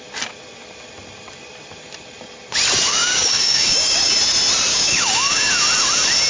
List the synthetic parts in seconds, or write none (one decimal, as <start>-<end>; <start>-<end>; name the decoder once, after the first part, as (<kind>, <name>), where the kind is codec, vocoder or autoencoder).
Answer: 2.9-4.1 (codec, DAC); 4.7-5.5